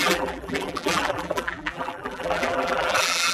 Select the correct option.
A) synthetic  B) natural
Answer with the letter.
A